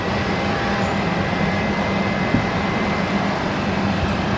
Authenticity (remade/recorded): remade